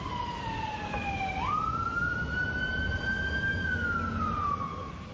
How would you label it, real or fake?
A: real